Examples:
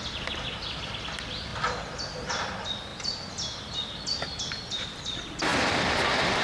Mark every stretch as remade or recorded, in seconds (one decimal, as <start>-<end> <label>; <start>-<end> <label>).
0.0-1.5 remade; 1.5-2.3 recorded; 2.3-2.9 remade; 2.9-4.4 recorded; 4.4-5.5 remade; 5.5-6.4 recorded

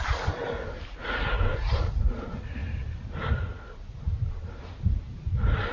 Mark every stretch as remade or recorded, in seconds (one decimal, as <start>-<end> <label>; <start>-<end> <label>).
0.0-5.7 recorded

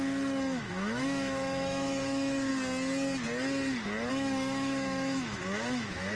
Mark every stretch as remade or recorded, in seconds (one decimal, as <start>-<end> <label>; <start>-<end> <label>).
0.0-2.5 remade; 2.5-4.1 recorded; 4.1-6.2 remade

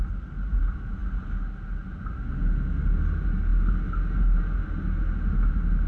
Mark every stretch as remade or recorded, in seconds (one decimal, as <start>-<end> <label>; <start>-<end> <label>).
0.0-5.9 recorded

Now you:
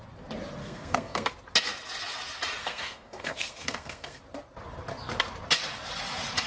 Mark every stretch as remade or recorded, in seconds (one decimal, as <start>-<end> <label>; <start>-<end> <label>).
0.0-0.6 recorded; 0.6-1.3 remade; 1.3-2.6 recorded; 2.6-4.2 remade; 4.2-6.5 recorded